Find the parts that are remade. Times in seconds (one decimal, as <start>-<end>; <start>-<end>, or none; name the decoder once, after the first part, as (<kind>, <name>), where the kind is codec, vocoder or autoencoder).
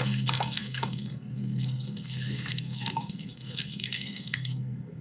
0.0-5.0 (codec, SNAC)